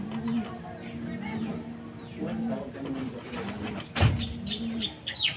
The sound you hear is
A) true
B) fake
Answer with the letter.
A